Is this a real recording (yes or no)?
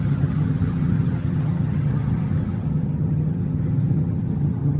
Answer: no